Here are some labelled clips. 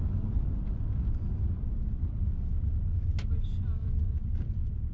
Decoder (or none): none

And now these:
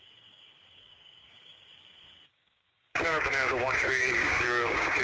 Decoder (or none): codec, DAC